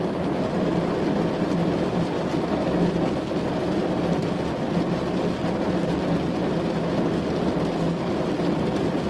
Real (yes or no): yes